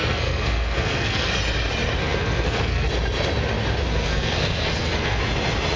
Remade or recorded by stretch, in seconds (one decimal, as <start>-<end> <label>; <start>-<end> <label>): 0.0-1.3 remade; 1.3-2.0 recorded; 2.0-2.9 remade; 2.9-3.9 recorded; 3.9-5.2 remade; 5.2-5.8 recorded